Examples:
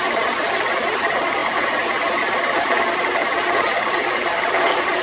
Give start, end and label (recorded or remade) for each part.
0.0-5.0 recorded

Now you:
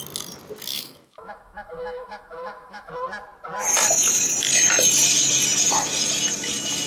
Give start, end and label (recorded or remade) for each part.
0.0-0.7 recorded; 0.7-2.9 remade; 2.9-6.9 recorded

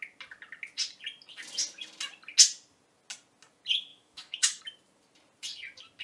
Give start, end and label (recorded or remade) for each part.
0.0-3.9 recorded; 3.9-4.6 remade; 4.6-6.0 recorded

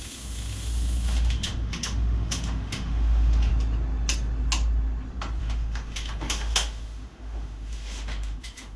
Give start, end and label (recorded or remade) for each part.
0.0-3.5 remade; 3.5-5.4 recorded; 5.4-8.8 remade